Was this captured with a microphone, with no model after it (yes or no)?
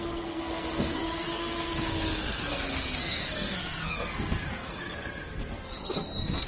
no